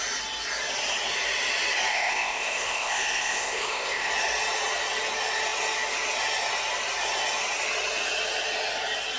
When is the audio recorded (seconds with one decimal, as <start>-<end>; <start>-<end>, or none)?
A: 0.0-1.9; 4.1-9.2